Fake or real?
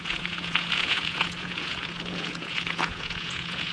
fake